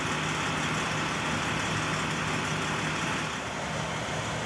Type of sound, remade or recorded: recorded